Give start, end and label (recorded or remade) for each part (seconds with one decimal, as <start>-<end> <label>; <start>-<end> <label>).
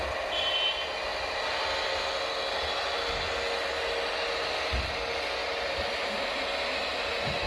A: 0.0-5.4 recorded; 5.4-5.9 remade; 5.9-7.5 recorded